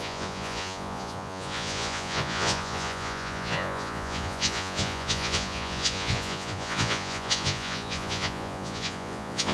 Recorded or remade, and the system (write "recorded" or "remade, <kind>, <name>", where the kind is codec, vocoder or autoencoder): remade, vocoder, Vocos